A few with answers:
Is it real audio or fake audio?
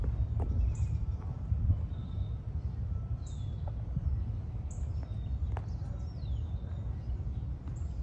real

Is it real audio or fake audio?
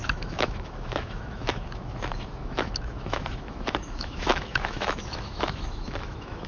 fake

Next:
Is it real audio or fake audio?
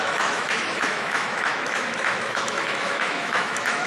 fake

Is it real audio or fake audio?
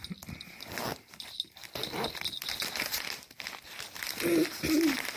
real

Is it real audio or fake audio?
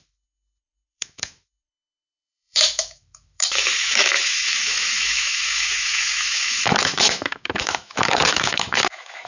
fake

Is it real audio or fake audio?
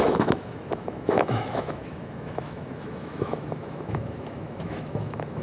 fake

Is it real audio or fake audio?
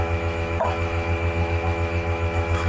fake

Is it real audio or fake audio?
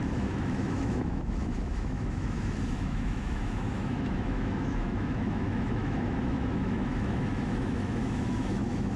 fake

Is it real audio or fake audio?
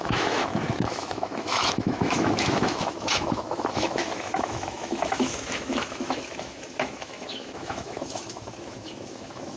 fake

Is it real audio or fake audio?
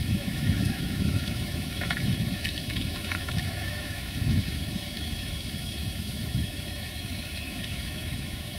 fake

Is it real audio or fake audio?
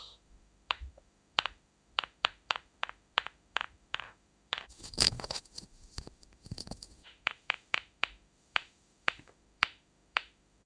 fake